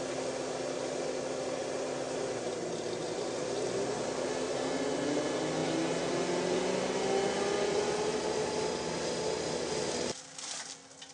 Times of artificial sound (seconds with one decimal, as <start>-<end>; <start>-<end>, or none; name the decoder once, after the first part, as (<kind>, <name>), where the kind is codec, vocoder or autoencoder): none